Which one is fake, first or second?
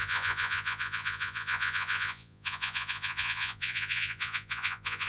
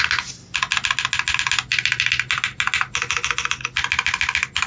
first